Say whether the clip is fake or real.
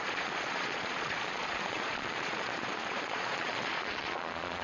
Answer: fake